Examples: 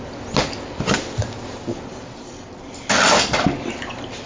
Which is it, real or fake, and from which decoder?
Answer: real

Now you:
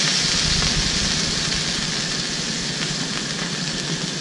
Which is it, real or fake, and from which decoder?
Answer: real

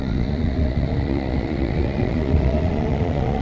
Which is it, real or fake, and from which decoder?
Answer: fake, vocoder, Vocos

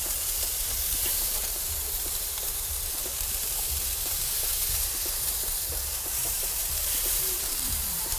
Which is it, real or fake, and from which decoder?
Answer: fake, vocoder, BigVGAN v2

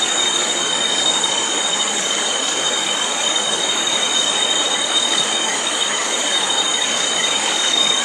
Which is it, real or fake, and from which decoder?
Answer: fake, codec, DAC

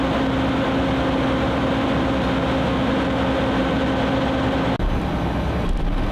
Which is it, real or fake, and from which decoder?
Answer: real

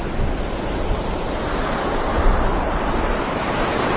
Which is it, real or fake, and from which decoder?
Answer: real